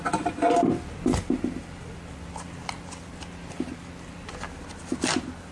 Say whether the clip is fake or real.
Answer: real